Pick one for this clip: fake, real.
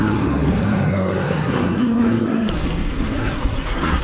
fake